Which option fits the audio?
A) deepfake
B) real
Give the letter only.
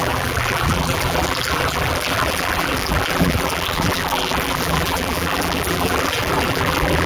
A